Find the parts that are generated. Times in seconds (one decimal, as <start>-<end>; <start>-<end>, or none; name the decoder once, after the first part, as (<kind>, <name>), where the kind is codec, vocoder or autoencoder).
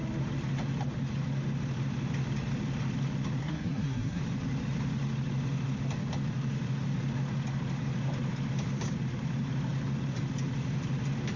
3.4-4.2 (codec, SNAC)